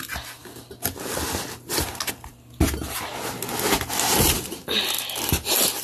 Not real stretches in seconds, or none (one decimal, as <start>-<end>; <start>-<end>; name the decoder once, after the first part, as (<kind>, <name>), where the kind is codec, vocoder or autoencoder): none